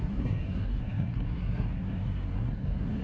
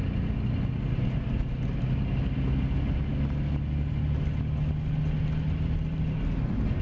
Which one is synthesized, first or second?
first